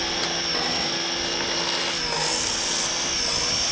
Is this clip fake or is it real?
real